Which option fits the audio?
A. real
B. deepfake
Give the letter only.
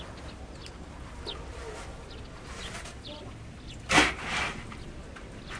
A